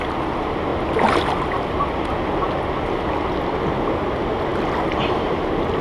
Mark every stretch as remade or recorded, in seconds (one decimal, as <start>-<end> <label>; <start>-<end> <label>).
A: 0.0-5.8 recorded